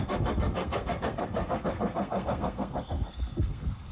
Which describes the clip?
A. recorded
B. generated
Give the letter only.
B